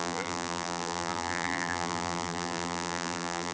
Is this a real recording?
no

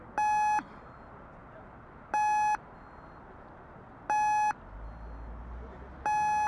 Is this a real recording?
yes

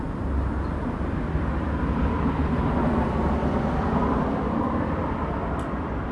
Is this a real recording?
no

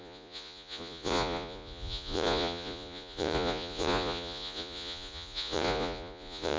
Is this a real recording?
no